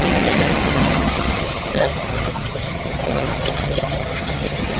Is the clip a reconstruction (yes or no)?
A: yes